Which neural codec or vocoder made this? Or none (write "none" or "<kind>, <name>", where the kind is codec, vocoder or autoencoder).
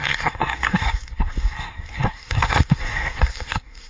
codec, SNAC